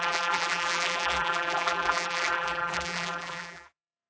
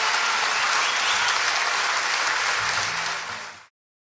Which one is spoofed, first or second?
first